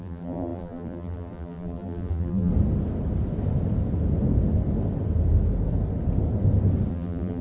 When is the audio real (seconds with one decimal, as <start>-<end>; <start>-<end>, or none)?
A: 2.5-6.9